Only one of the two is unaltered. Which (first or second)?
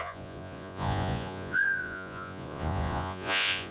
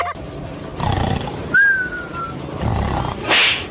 second